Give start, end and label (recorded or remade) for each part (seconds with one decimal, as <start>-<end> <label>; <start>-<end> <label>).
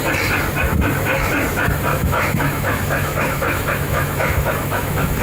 0.0-1.9 recorded; 1.9-5.2 remade